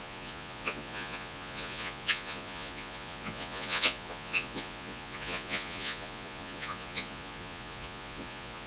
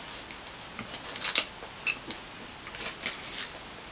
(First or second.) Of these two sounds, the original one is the second